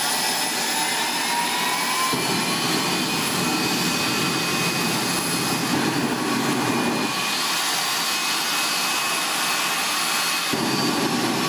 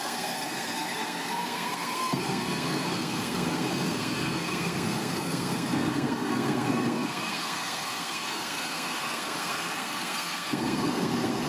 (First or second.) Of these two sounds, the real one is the first